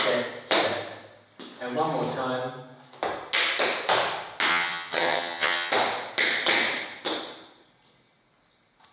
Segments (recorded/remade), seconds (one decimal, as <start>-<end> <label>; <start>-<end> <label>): 0.0-4.5 recorded; 4.5-5.7 remade; 5.7-8.9 recorded